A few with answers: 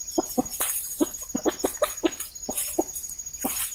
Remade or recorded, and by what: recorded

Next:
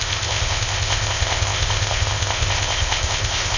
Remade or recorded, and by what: remade, codec, ZipCodec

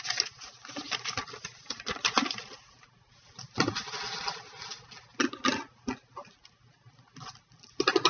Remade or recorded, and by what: recorded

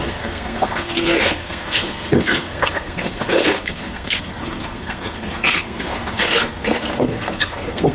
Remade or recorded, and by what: remade, codec, SNAC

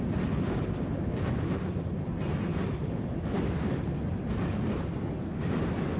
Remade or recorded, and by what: recorded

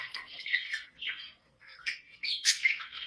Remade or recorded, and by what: remade, codec, SNAC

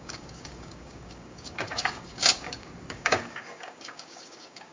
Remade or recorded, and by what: remade, codec, DAC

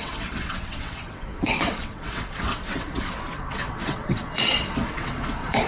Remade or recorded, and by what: remade, vocoder, WaveNeXt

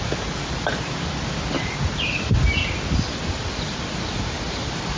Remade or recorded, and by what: recorded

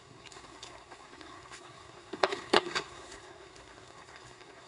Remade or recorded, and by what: remade, codec, SNAC